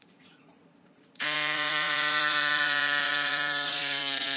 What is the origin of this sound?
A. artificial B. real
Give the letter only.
A